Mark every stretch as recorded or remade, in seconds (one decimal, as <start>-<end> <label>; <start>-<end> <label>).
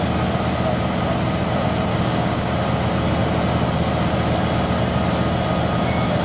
0.0-1.9 recorded; 1.9-2.5 remade; 2.5-6.2 recorded